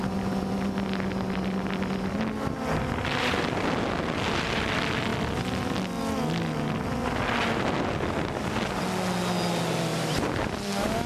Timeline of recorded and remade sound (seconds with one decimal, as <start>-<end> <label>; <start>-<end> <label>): 0.0-9.9 recorded; 9.9-10.5 remade; 10.5-11.1 recorded